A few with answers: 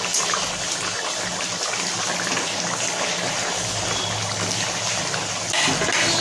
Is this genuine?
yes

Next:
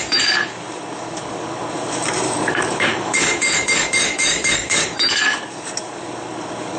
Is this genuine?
no